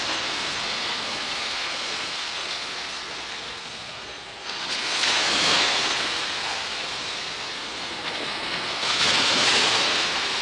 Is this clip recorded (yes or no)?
no